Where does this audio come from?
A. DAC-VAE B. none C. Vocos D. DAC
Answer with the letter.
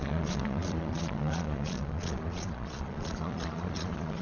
C